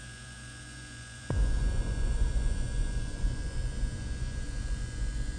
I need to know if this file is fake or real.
fake